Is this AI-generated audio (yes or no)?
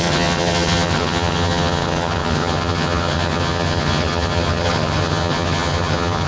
yes